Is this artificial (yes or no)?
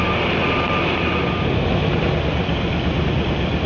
yes